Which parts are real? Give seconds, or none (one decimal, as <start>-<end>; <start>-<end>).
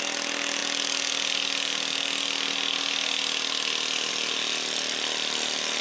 0.0-5.8